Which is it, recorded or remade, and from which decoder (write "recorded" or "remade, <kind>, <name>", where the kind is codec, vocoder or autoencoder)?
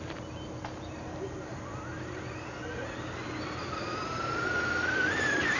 recorded